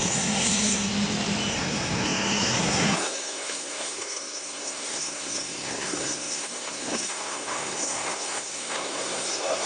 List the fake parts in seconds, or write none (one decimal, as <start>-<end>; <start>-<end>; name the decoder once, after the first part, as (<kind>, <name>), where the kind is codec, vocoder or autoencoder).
0.0-0.9 (codec, SNAC); 1.5-9.7